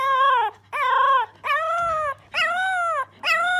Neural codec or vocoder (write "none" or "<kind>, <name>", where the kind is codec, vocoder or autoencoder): none